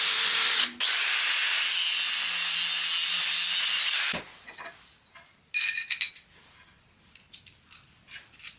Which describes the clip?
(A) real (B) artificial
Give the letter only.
A